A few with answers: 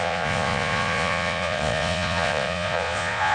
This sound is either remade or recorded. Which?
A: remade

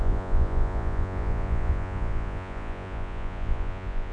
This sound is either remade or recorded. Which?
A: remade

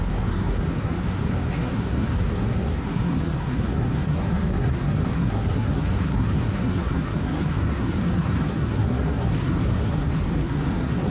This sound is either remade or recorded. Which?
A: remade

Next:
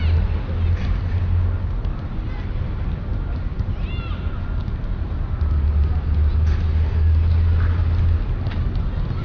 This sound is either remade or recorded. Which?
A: recorded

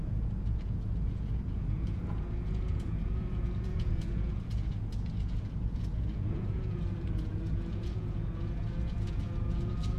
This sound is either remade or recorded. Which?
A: remade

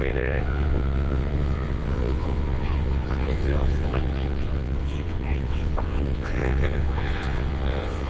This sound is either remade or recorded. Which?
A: remade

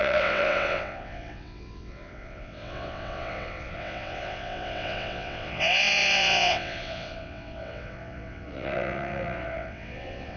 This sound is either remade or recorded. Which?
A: remade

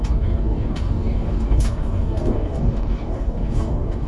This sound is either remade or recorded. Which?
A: remade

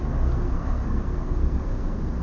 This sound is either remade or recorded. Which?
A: remade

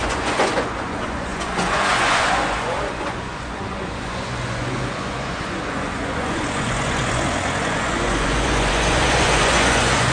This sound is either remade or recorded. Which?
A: remade